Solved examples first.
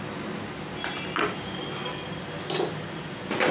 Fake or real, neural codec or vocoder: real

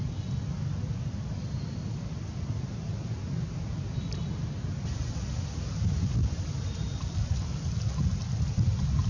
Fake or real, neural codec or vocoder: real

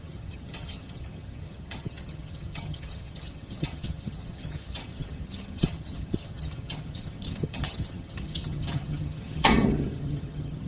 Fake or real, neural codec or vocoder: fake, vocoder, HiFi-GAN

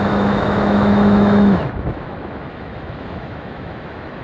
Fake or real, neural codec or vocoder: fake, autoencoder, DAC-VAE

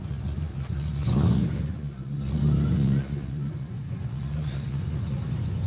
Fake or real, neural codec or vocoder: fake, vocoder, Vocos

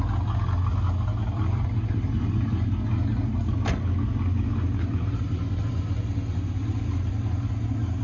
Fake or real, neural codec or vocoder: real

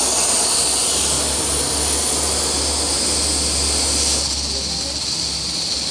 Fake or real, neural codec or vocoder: real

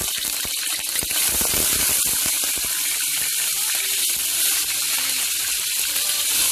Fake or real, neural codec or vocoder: fake, vocoder, BigVGAN v2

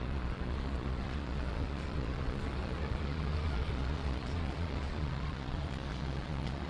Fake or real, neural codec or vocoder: fake, vocoder, Vocos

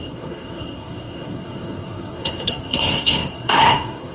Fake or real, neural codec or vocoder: fake, codec, SNAC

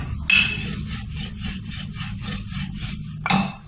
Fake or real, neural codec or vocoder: real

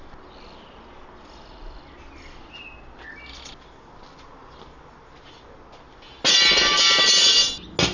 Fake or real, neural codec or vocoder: real